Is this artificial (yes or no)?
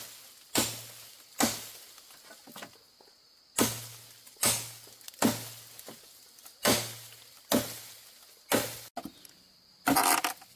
no